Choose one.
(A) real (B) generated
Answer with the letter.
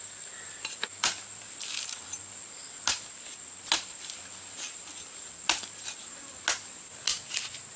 A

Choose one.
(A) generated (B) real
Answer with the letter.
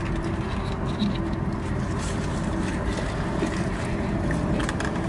B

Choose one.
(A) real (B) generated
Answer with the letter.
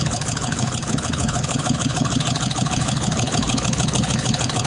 B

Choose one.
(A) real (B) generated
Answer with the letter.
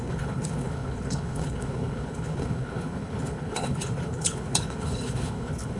B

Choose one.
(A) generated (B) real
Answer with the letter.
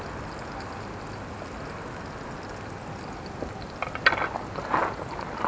B